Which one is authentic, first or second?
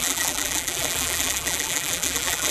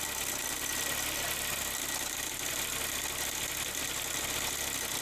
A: second